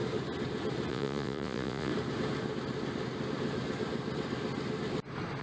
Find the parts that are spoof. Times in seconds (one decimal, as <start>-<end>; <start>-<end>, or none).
0.9-1.9